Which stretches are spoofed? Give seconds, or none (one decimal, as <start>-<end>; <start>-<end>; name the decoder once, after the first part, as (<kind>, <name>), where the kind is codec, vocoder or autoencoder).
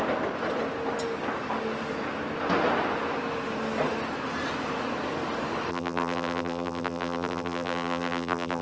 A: 5.7-8.6 (vocoder, BigVGAN v2)